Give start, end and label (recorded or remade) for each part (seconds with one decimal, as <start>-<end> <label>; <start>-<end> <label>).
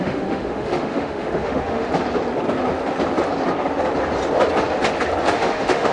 0.0-1.9 remade; 1.9-5.3 recorded; 5.3-5.9 remade